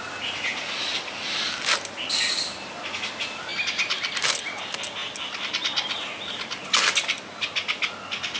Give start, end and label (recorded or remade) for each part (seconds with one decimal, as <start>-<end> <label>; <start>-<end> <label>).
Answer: 0.0-8.4 recorded